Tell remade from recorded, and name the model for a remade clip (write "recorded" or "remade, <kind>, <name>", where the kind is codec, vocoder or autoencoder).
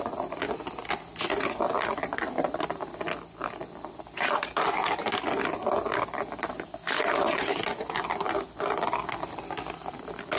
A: recorded